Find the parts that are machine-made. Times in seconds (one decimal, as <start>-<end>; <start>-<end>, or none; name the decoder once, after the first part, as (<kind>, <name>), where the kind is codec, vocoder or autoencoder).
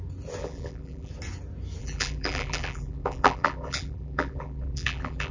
0.4-1.1 (vocoder, BigVGAN v2); 1.8-5.3